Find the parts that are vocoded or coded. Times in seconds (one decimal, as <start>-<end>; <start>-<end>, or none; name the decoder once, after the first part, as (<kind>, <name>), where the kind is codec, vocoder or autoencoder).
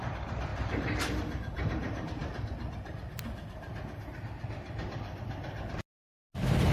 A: 0.5-1.0 (vocoder, BigVGAN v2)